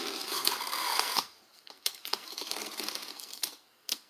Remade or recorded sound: remade